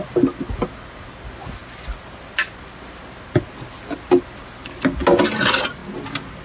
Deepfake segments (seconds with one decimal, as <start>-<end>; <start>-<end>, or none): none